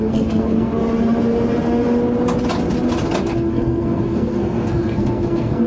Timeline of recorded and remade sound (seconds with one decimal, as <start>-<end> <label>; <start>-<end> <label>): 0.0-0.8 remade; 0.8-3.5 recorded; 3.5-5.7 remade